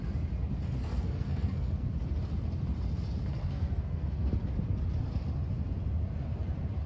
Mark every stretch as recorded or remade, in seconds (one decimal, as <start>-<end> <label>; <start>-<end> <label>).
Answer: 0.0-0.8 recorded; 0.8-1.9 remade; 1.9-3.4 recorded; 3.4-4.3 remade; 4.3-6.9 recorded